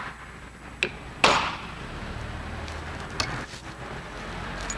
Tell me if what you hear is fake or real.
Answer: real